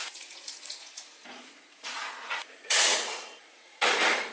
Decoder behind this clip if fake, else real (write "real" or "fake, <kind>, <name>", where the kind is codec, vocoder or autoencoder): fake, vocoder, Vocos